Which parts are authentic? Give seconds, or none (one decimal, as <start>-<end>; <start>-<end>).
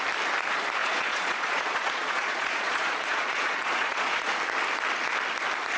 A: 0.0-0.8; 4.3-5.8